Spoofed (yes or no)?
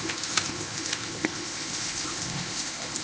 yes